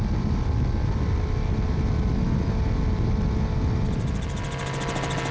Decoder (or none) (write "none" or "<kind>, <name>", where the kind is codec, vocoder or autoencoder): none